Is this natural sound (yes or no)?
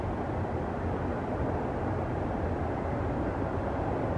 yes